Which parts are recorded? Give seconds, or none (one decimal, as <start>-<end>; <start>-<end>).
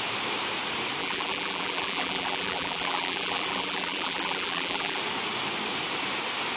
0.0-1.0; 5.0-6.6